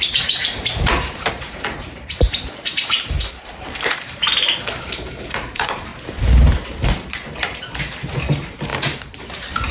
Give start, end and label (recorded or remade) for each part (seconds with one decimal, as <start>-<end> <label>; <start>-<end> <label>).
0.0-5.9 remade; 5.9-8.2 recorded; 8.2-9.7 remade